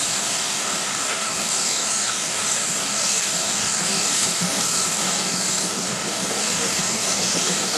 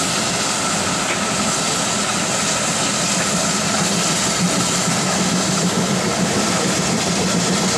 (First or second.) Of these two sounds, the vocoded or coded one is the first